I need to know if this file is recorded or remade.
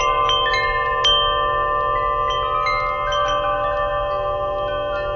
recorded